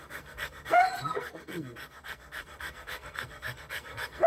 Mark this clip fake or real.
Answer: fake